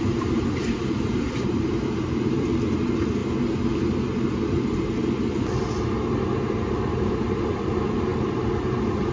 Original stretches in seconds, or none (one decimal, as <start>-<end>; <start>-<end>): 3.2-6.5; 8.1-8.7